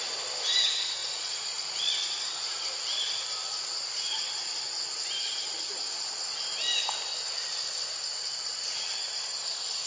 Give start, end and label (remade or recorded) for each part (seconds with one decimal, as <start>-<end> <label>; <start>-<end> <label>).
0.0-1.0 recorded; 1.0-1.9 remade; 1.9-9.9 recorded